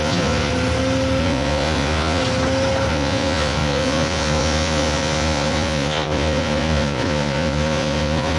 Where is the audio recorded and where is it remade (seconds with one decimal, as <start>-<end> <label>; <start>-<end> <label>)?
0.0-0.5 remade; 0.5-1.2 recorded; 1.2-2.2 remade; 2.2-2.9 recorded; 2.9-8.4 remade